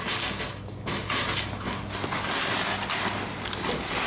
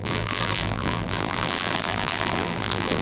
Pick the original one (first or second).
first